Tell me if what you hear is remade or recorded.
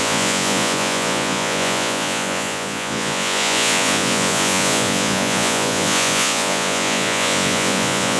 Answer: remade